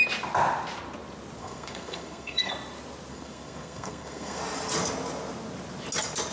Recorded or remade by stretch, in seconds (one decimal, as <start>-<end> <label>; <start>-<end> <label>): 0.0-1.4 recorded; 1.4-2.5 remade; 2.5-3.1 recorded; 3.1-4.4 remade; 4.4-6.3 recorded